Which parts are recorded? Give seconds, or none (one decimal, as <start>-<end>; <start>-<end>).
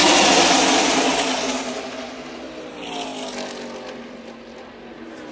0.0-5.3